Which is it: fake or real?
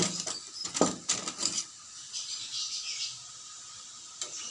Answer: real